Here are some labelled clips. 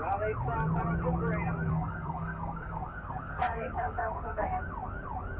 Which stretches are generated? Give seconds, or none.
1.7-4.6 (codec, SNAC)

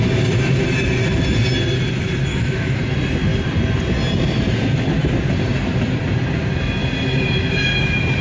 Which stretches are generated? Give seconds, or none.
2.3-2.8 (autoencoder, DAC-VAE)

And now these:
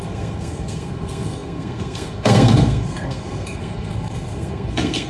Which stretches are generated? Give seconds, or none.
0.0-5.1 (codec, SNAC)

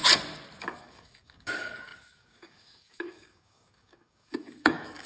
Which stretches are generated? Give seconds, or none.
0.6-5.1 (codec, DAC)

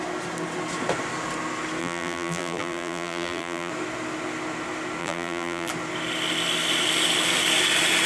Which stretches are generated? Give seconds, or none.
1.8-3.7 (vocoder, BigVGAN v2); 5.0-5.7

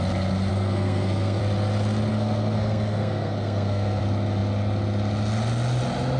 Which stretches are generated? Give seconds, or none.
0.5-1.4 (codec, SNAC); 2.1-4.0

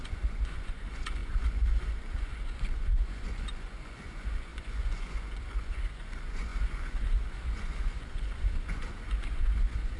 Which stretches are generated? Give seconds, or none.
0.0-10.0 (vocoder, Vocos)

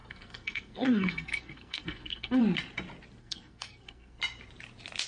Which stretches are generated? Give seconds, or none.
0.0-2.4 (codec, SNAC); 3.2-4.2